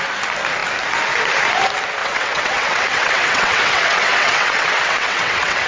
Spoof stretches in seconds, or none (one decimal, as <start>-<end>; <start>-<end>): 2.0-5.7